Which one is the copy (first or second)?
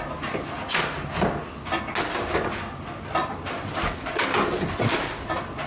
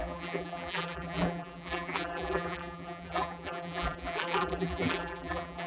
second